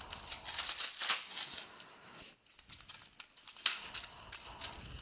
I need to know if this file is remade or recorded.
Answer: recorded